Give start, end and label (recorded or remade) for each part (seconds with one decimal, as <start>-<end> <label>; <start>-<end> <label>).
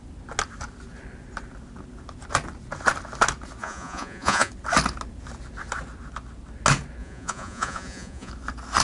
0.0-3.6 recorded; 3.6-4.5 remade; 4.5-7.0 recorded; 7.0-8.3 remade; 8.3-8.8 recorded